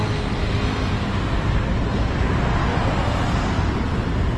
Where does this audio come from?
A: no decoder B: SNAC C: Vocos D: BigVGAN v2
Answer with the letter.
A